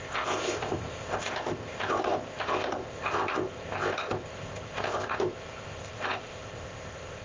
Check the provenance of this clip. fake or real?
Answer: fake